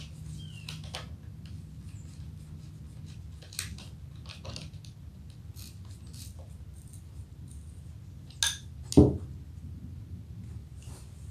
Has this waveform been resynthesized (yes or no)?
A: no